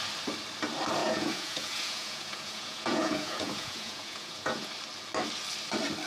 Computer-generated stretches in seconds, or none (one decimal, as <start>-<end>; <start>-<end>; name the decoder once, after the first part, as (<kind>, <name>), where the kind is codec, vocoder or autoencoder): 1.0-4.7 (vocoder, Vocos)